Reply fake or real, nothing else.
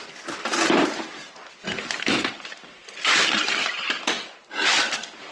fake